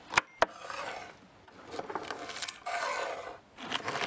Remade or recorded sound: recorded